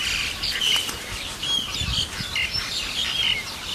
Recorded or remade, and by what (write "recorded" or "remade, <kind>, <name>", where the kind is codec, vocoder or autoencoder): recorded